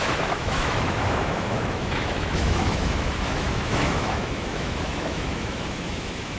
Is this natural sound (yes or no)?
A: no